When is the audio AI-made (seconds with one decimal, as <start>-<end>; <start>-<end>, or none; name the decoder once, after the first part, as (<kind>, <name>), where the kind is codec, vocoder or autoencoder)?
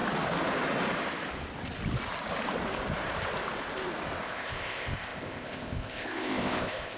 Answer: 4.2-7.0 (codec, ZipCodec)